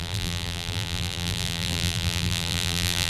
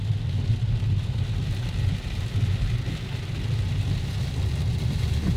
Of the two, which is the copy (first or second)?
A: first